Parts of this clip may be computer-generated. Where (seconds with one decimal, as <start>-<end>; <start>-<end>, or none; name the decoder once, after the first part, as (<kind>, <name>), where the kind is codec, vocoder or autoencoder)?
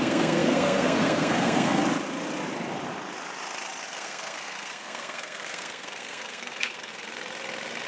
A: 0.0-1.8 (codec, SNAC); 3.9-6.9